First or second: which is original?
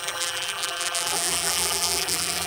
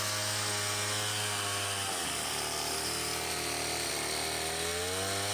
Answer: second